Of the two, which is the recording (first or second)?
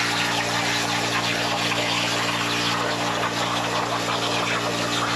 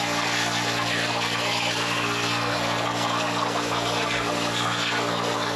first